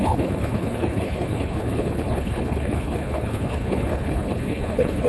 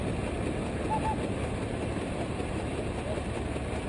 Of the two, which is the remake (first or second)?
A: first